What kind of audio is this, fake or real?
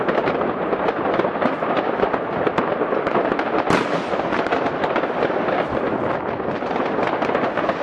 real